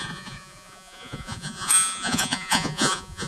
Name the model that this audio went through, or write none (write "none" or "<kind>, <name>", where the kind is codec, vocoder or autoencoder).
vocoder, Vocos